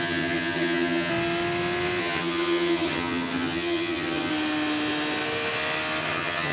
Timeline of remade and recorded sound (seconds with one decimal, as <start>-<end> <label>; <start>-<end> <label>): 0.0-1.1 remade; 1.1-2.0 recorded; 2.0-4.3 remade; 4.3-6.0 recorded; 6.0-6.5 remade